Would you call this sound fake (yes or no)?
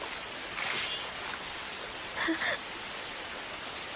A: no